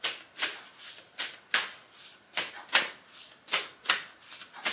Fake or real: real